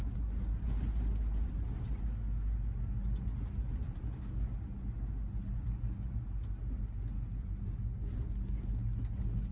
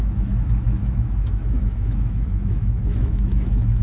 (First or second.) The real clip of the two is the first